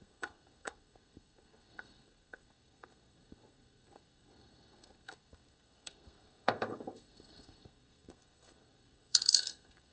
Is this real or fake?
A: fake